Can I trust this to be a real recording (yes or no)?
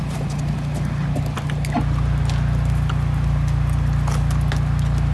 yes